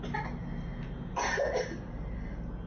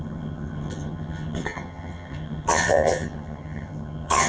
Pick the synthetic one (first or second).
second